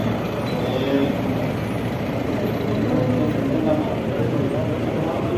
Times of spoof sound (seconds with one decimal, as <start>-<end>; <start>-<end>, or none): 1.0-2.3